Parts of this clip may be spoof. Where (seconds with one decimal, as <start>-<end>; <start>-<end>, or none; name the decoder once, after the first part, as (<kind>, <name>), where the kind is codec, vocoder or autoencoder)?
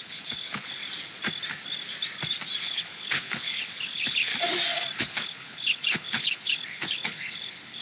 0.0-0.8 (codec, HILCodec); 2.6-4.3; 5.0-7.8